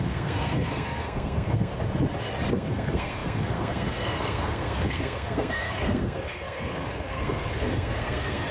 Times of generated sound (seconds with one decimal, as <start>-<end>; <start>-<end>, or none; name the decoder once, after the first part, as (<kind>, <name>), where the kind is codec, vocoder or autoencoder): 0.0-1.7 (codec, SNAC); 2.5-8.5